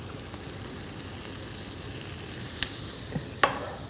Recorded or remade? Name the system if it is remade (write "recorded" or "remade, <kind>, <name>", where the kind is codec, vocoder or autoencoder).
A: recorded